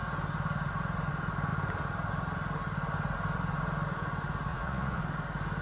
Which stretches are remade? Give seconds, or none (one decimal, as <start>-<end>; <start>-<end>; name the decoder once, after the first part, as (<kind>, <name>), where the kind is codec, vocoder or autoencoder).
4.5-5.0 (vocoder, Vocos)